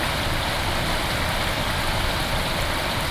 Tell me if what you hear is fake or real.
real